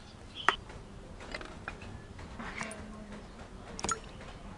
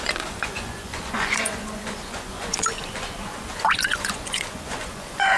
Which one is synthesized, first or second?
second